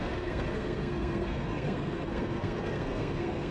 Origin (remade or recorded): remade